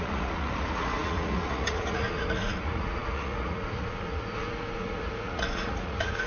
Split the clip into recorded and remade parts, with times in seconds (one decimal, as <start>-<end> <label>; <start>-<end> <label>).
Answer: 0.0-6.3 remade